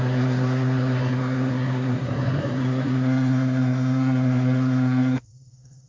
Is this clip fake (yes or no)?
yes